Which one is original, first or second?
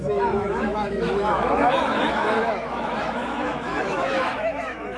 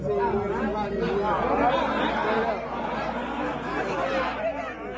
second